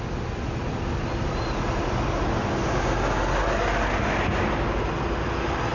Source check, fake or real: real